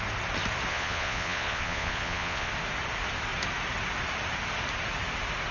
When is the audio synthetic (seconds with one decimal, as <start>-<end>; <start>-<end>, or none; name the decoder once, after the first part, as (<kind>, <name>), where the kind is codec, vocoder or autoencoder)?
0.7-2.5 (vocoder, Vocos)